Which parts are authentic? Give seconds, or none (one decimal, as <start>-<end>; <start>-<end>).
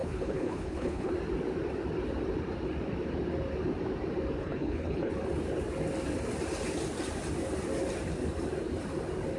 1.1-4.4; 5.1-9.4